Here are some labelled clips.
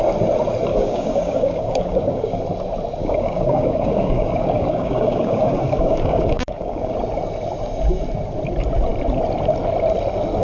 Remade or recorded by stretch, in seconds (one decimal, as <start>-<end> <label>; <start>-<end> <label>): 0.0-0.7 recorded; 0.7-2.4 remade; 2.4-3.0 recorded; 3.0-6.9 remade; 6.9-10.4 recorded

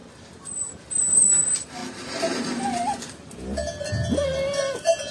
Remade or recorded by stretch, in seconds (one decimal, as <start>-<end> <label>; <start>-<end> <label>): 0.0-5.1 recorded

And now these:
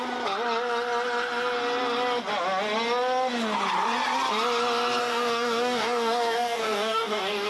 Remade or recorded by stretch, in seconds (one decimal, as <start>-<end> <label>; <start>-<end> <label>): 0.0-5.0 recorded; 5.0-7.5 remade

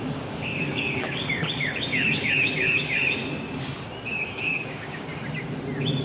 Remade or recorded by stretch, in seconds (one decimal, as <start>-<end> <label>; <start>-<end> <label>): 0.0-3.2 remade; 3.2-4.1 recorded; 4.1-5.1 remade; 5.1-6.0 recorded

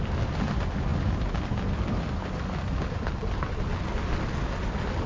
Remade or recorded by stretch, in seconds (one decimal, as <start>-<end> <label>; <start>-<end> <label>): 0.0-5.1 recorded

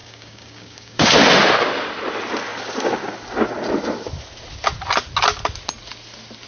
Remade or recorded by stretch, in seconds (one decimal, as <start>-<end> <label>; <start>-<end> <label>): 0.0-1.1 remade; 1.1-6.5 recorded

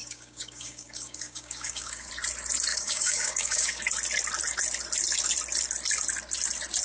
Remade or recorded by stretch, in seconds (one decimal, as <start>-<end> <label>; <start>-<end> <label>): 0.0-2.1 remade; 2.1-2.7 recorded; 2.7-3.8 remade; 3.8-6.8 recorded

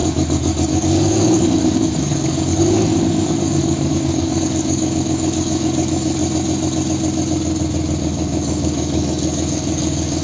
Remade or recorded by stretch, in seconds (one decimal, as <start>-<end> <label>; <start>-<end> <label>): 0.0-6.2 remade; 6.2-8.0 recorded; 8.0-10.2 remade